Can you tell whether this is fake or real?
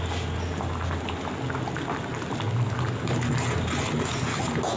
real